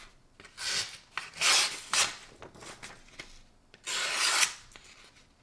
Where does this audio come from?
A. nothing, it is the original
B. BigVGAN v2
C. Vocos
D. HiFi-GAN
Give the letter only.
A